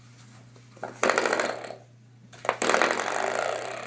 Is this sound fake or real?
real